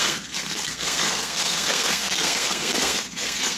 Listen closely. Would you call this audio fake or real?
fake